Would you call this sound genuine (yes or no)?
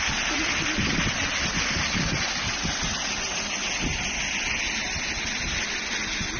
yes